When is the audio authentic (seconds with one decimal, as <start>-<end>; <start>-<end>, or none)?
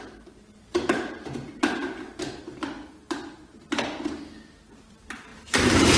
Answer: 1.4-4.7